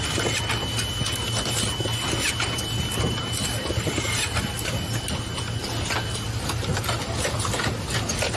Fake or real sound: real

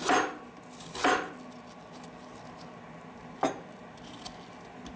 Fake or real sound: real